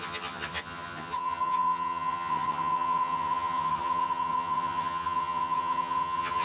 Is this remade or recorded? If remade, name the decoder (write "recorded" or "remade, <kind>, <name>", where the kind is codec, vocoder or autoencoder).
remade, vocoder, HiFi-GAN